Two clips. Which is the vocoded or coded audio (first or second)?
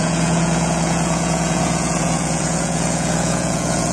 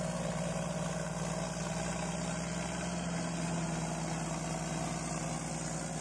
first